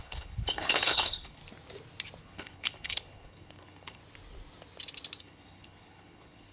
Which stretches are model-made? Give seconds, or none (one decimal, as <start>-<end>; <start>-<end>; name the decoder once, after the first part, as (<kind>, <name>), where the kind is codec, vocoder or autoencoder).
0.0-1.4 (codec, HILCodec); 2.2-4.0; 5.2-6.5